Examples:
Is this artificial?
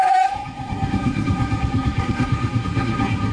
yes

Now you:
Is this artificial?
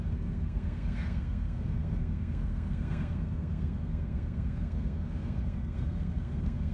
yes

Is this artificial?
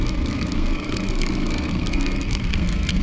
yes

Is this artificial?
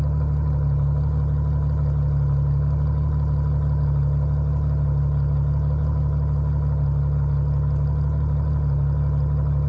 no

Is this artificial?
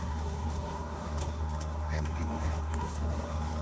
yes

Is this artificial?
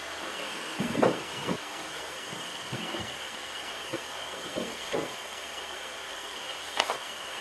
yes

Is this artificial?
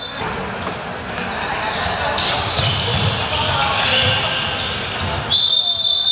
no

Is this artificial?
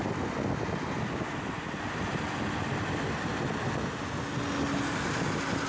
no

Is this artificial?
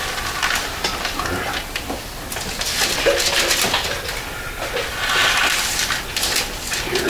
no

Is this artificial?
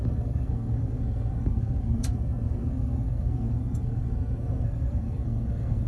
yes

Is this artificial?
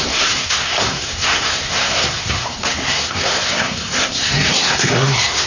yes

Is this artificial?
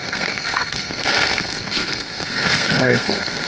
yes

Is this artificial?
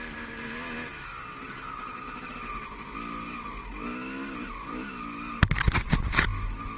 no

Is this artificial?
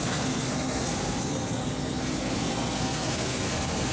yes